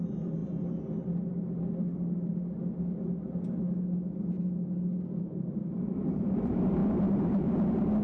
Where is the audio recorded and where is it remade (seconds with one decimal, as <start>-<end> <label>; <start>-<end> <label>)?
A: 0.0-0.4 remade; 0.4-5.2 recorded; 5.2-8.0 remade